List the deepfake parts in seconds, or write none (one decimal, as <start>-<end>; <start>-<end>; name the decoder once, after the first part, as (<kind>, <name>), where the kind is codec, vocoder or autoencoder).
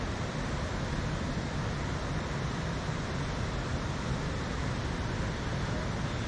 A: none